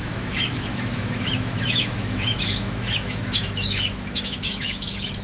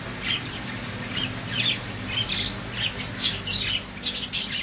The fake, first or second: first